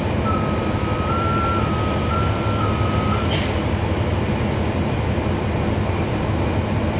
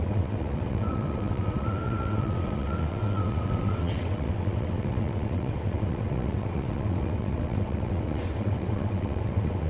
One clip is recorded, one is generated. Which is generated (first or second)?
second